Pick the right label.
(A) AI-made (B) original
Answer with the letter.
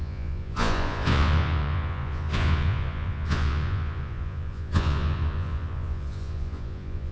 A